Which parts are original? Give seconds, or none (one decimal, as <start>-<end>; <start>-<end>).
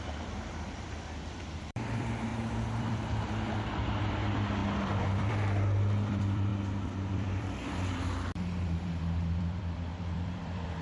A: 2.3-2.8; 6.5-7.1